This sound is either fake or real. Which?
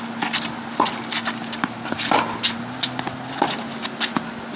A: real